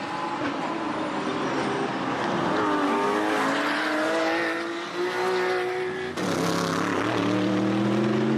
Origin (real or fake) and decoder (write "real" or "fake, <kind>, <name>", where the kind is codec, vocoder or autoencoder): real